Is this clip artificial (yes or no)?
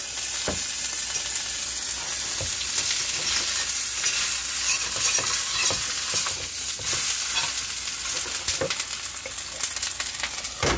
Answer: no